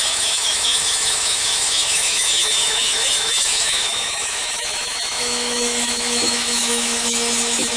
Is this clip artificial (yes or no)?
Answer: yes